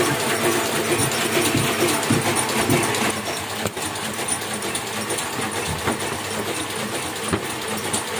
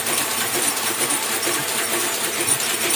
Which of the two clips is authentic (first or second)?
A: first